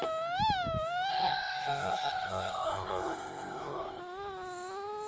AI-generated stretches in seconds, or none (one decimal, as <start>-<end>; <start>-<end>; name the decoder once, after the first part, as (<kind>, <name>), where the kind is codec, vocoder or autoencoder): 1.1-4.0 (codec, SNAC)